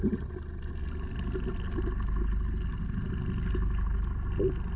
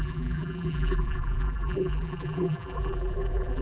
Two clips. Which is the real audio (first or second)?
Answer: first